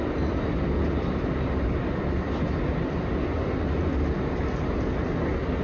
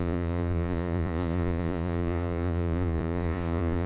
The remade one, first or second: second